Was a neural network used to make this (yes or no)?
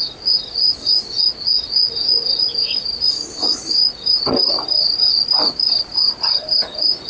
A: no